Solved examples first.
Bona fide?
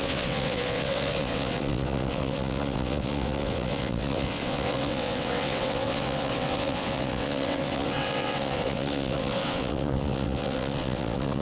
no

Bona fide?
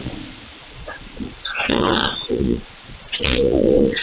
no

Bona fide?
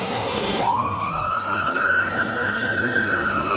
no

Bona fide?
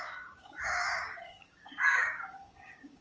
no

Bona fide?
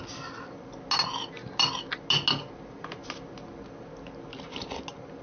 yes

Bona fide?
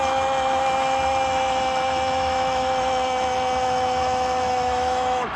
no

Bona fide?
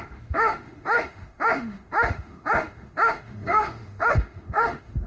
no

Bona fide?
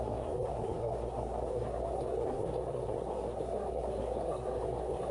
no